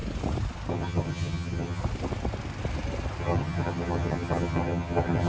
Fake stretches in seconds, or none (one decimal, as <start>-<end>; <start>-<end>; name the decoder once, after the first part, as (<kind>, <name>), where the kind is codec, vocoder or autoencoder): 0.7-1.8 (vocoder, HiFi-GAN); 3.2-5.3